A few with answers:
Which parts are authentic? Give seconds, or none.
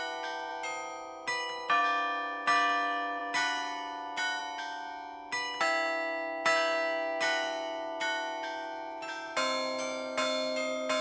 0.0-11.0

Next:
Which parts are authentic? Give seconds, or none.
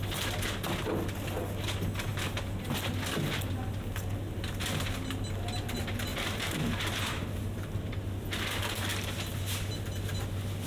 0.0-6.1; 7.9-10.7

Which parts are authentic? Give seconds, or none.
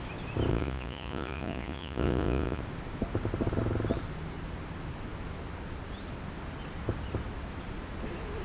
0.0-0.5; 2.6-8.4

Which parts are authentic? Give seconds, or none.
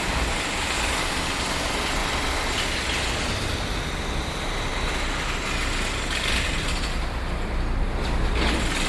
2.0-3.1; 4.7-8.9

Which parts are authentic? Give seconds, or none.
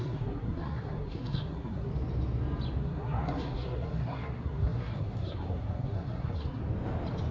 1.9-2.8; 6.6-7.3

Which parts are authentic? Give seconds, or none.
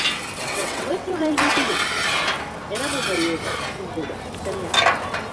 0.0-0.4; 1.8-5.3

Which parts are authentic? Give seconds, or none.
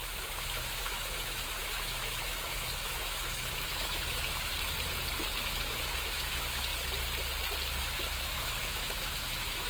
4.5-5.4; 6.7-7.8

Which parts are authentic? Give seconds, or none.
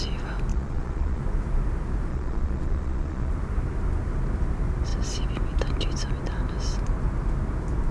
0.0-0.5; 1.2-2.1; 3.3-7.9